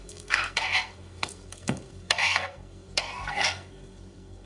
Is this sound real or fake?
fake